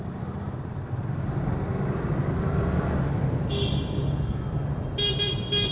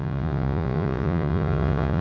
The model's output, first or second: second